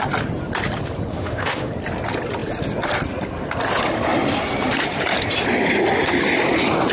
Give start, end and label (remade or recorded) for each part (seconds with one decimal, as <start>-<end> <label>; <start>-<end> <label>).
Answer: 0.0-1.1 recorded; 1.1-1.7 remade; 1.7-6.9 recorded